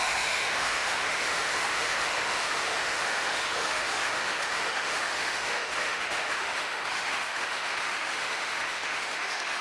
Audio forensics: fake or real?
fake